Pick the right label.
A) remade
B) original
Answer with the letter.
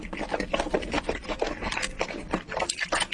B